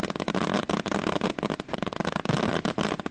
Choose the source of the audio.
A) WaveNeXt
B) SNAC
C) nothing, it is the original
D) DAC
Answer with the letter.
C